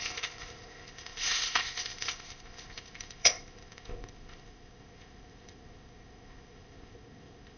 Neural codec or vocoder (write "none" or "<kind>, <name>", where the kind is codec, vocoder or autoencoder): codec, ZipCodec